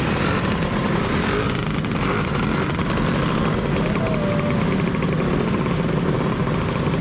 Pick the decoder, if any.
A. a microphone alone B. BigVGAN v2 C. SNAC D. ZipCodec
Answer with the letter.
A